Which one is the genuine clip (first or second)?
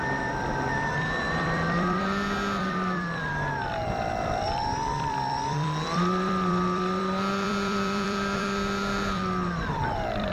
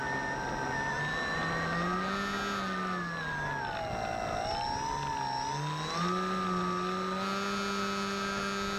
second